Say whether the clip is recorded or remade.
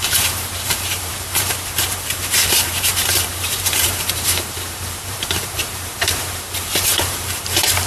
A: remade